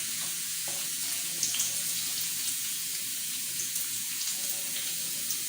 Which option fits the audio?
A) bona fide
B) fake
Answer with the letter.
B